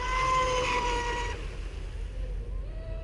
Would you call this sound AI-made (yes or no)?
no